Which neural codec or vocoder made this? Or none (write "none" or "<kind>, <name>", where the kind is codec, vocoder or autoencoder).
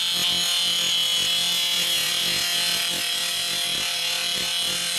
none